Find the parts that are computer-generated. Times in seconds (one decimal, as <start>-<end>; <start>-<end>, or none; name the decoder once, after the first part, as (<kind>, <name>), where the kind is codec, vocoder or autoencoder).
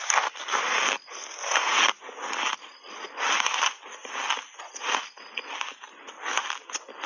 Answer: none